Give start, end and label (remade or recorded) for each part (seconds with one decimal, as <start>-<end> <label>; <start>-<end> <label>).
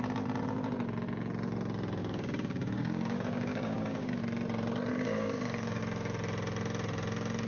0.0-2.0 recorded; 2.0-4.2 remade; 4.2-4.9 recorded; 4.9-5.8 remade; 5.8-7.5 recorded